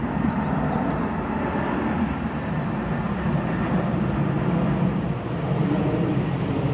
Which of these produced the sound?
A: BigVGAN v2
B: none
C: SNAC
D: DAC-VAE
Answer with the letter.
B